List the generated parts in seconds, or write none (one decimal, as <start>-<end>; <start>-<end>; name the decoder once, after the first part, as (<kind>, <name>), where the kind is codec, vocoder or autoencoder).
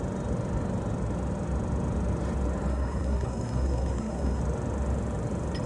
2.7-4.4 (codec, SNAC)